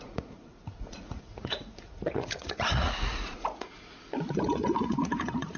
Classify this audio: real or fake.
fake